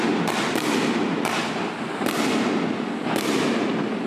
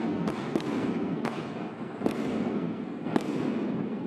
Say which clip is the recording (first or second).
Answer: first